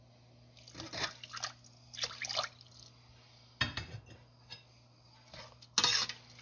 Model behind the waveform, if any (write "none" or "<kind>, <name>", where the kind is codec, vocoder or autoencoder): none